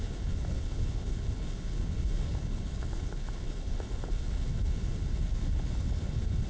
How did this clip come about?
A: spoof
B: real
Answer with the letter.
A